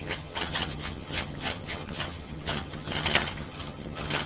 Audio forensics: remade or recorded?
remade